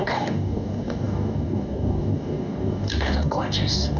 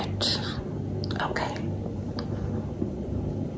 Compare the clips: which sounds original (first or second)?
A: second